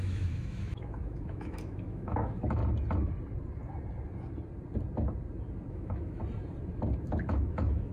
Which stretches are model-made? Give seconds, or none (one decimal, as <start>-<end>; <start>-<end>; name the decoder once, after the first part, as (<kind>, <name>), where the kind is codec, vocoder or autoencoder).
0.0-2.6 (autoencoder, DAC-VAE); 5.7-6.2; 7.0-7.9